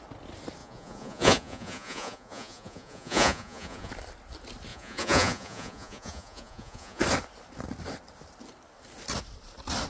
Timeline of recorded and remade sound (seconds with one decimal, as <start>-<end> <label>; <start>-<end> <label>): 0.0-0.6 recorded; 0.6-3.9 remade; 3.9-4.7 recorded; 4.7-7.0 remade; 7.0-9.9 recorded